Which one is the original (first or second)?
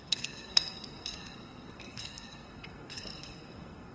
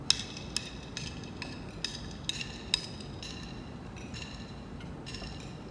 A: second